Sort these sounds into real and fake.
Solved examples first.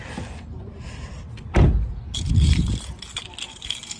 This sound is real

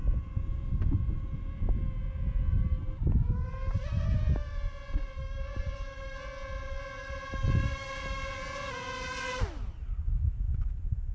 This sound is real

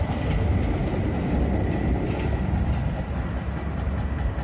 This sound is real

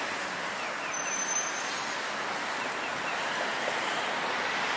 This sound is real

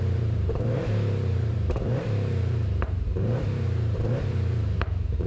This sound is fake